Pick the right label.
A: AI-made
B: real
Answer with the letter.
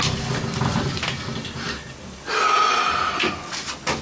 B